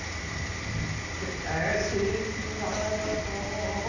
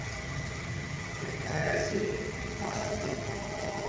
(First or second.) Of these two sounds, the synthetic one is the second